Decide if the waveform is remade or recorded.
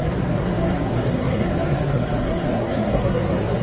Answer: remade